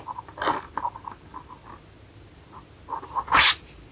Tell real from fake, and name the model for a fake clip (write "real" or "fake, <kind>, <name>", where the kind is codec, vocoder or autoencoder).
real